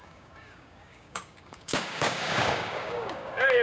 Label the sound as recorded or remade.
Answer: remade